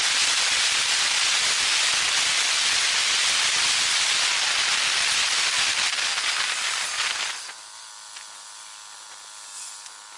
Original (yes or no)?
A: yes